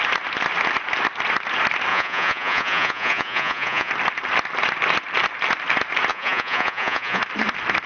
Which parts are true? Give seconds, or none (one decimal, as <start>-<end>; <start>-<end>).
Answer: 0.0-1.9; 3.9-6.1; 7.2-7.9